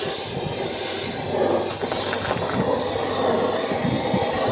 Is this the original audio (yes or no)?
yes